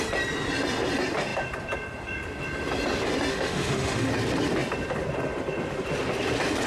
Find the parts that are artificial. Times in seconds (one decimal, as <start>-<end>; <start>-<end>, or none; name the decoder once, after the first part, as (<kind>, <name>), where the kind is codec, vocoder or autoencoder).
3.3-4.1 (autoencoder, DAC-VAE)